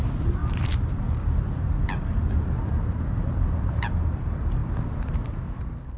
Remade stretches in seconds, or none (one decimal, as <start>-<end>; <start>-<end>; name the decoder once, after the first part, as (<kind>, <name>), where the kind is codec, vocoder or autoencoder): 0.0-6.0 (vocoder, BigVGAN v2)